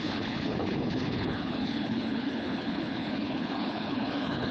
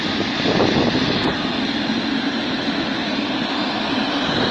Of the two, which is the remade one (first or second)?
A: first